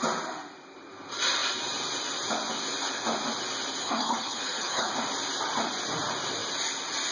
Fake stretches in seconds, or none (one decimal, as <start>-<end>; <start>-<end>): 3.8-4.9